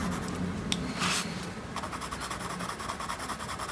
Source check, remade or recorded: recorded